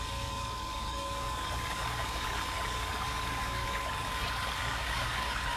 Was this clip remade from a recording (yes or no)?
yes